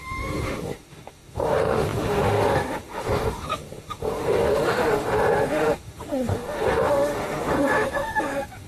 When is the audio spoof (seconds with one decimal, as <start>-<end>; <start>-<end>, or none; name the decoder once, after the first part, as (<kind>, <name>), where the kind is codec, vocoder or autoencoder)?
0.0-8.7 (autoencoder, DAC-VAE)